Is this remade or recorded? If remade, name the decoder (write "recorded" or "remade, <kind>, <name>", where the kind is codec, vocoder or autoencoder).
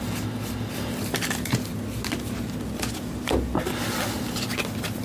recorded